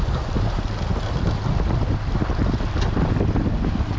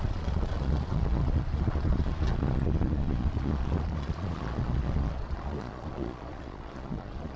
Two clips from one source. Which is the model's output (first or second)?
second